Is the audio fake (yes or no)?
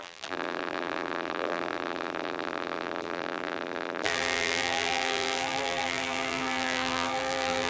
yes